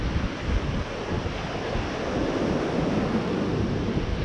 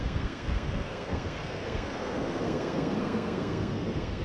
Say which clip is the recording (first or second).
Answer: first